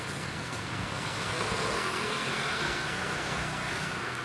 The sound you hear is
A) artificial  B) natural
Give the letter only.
A